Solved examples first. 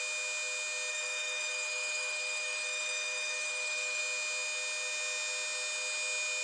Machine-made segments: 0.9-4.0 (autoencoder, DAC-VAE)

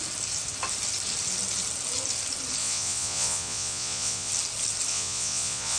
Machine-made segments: 2.6-4.3 (vocoder, Vocos); 4.9-5.8

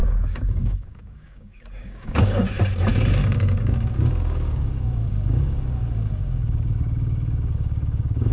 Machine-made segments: 0.0-2.6 (codec, DAC); 3.2-8.3